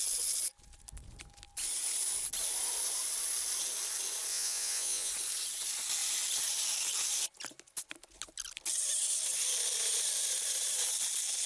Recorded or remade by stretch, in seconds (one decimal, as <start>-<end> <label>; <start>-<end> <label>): 0.0-4.3 recorded; 4.3-5.1 remade; 5.1-11.5 recorded